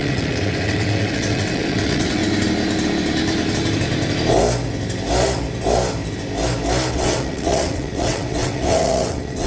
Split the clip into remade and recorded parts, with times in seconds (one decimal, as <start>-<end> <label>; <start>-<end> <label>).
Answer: 0.0-2.2 remade; 2.2-6.9 recorded; 6.9-9.5 remade